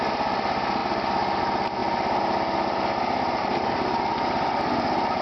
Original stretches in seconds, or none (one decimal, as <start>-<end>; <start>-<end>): 0.0-5.2